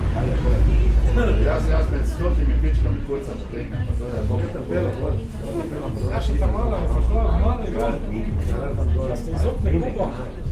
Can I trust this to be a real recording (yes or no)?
yes